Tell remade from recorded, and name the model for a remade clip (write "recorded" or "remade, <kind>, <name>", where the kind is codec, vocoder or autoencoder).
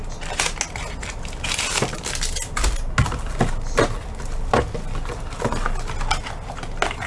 recorded